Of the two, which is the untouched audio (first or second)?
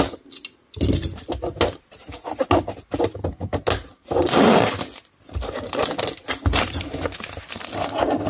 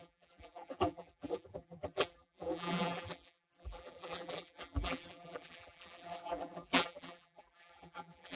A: first